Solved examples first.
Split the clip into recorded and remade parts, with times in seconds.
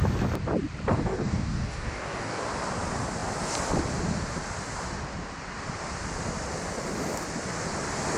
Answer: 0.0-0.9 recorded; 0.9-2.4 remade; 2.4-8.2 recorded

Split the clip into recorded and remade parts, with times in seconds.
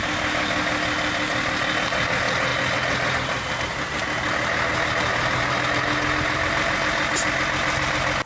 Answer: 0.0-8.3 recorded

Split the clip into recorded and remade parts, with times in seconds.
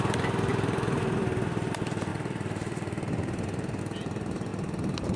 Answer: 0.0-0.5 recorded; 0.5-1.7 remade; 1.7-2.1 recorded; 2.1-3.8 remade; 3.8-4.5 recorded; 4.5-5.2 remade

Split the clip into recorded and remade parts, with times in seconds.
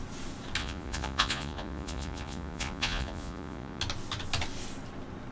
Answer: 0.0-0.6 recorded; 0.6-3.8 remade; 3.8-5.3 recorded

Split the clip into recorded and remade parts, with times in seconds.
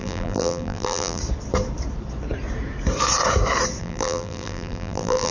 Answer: 0.0-1.2 remade; 1.2-3.8 recorded; 3.8-5.3 remade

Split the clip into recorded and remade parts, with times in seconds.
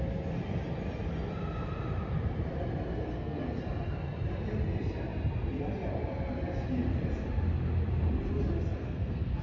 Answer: 0.0-3.0 recorded; 3.0-3.6 remade; 3.6-8.8 recorded; 8.8-9.4 remade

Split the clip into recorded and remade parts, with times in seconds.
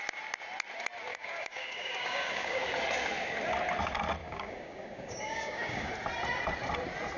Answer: 0.0-1.1 recorded; 1.1-2.6 remade; 2.6-4.2 recorded; 4.2-5.9 remade; 5.9-7.2 recorded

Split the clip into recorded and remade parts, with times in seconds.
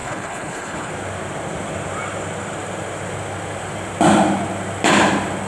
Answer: 0.0-0.9 remade; 0.9-5.5 recorded